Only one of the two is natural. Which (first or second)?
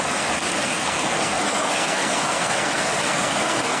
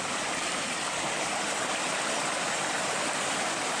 second